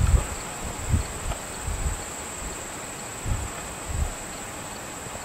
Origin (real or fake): real